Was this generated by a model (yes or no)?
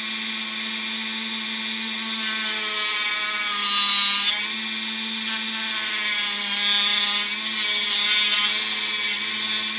no